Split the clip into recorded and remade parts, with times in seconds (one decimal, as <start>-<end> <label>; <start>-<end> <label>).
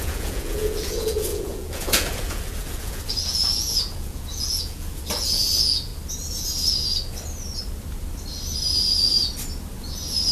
0.0-5.9 remade; 5.9-10.3 recorded